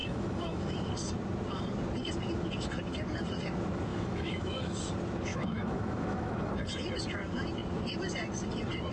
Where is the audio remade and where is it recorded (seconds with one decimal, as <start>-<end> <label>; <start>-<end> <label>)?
0.0-0.9 remade; 0.9-3.9 recorded; 3.9-4.8 remade; 4.8-5.3 recorded; 5.3-6.5 remade; 6.5-8.9 recorded